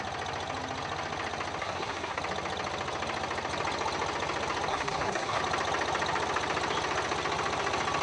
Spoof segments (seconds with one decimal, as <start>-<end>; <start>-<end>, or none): 1.6-2.2; 4.7-5.4